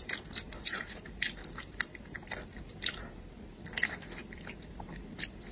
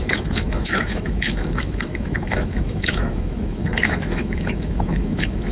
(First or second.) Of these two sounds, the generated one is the second